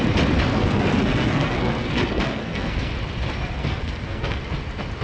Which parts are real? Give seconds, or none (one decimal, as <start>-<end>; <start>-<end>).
0.0-0.5; 2.9-3.6; 4.4-5.0